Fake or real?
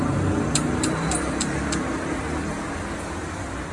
real